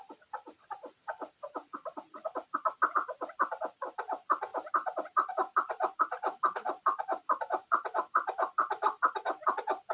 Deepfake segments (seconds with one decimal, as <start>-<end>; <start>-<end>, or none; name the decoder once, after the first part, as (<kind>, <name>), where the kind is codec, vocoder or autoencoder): 0.0-4.5 (vocoder, BigVGAN v2); 5.3-9.9